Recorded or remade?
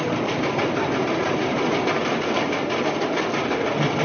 recorded